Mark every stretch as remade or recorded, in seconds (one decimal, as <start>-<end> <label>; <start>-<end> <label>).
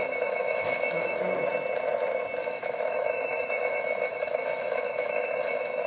0.0-1.2 remade; 1.2-2.4 recorded; 2.4-5.9 remade